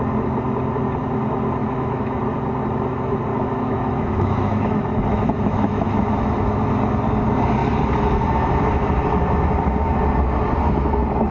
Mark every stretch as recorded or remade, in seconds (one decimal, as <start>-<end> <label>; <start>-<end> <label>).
0.0-1.6 recorded; 1.6-2.2 remade; 2.2-3.3 recorded; 3.3-6.0 remade; 6.0-11.3 recorded